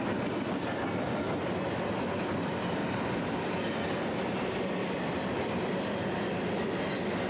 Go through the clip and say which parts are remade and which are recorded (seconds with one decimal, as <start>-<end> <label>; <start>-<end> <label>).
0.0-2.8 recorded; 2.8-3.6 remade; 3.6-4.8 recorded; 4.8-5.8 remade; 5.8-7.3 recorded